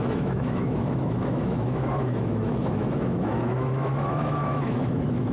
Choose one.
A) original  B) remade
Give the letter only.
B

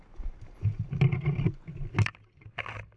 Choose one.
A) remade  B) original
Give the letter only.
B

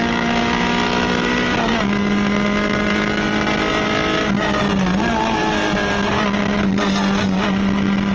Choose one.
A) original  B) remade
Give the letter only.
A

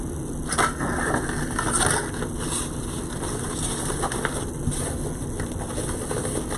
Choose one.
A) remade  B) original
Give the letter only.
B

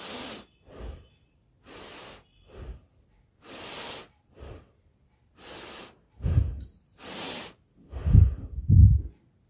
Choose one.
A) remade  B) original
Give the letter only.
B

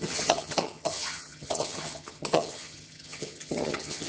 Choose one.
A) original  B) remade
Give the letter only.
B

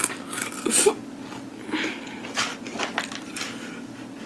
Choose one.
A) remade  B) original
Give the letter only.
B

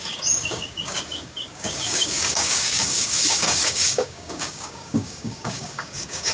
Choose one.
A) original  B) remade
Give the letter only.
B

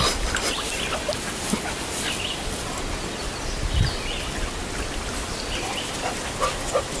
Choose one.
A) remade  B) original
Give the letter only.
B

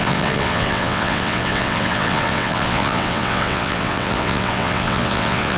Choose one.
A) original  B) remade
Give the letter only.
B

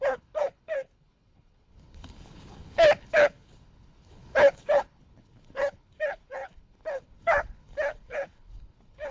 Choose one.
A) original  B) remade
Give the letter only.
B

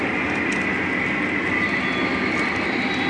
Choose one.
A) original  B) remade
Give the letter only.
A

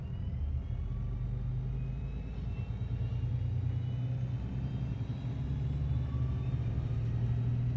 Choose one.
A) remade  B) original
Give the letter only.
B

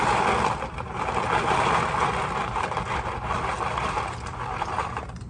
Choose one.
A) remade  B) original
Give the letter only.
B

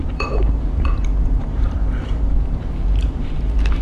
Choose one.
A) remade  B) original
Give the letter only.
A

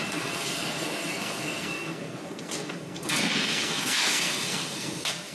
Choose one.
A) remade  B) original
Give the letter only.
A